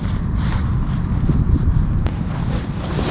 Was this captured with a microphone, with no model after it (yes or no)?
no